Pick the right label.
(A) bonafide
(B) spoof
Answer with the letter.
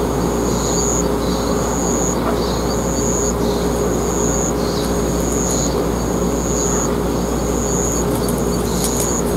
A